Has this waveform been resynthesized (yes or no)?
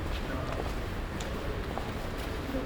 yes